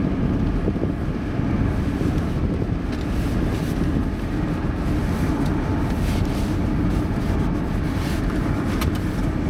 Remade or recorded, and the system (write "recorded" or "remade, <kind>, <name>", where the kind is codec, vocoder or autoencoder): recorded